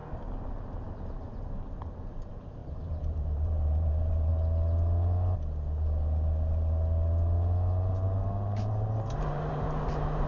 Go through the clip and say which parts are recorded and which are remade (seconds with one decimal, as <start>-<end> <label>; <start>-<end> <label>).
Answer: 0.0-1.4 recorded; 1.4-4.3 remade; 4.3-8.7 recorded; 8.7-10.3 remade